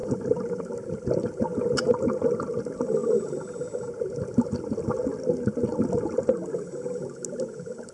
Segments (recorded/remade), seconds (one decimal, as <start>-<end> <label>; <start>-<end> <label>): 0.0-7.9 recorded